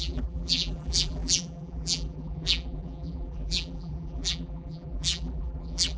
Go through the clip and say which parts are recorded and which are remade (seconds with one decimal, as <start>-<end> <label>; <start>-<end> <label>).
0.0-6.0 remade